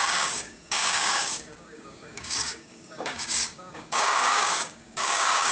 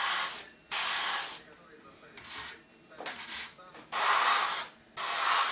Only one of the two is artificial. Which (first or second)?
first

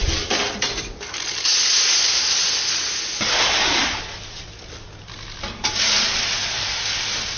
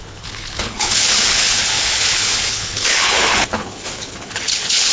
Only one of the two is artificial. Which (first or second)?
second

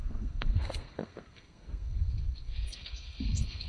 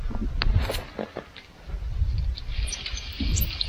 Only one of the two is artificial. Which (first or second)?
first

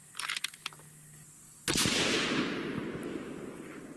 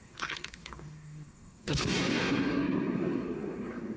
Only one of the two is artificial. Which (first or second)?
second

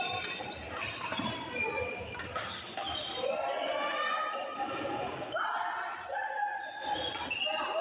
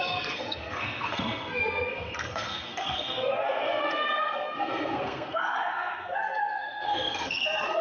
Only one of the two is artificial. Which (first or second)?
second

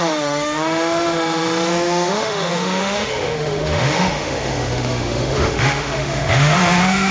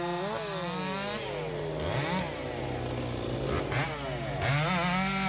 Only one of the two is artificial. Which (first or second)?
first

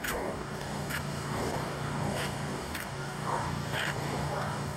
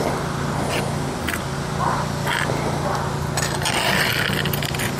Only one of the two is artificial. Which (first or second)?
first